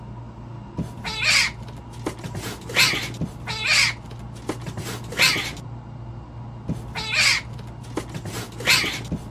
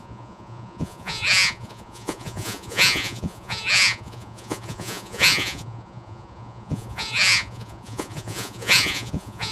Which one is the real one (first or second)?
first